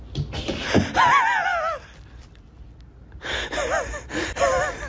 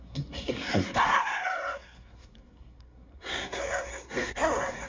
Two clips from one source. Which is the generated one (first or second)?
second